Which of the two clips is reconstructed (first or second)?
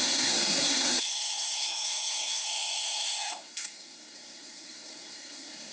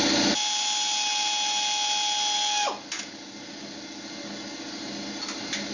first